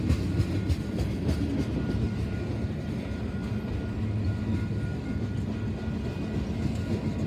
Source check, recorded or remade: recorded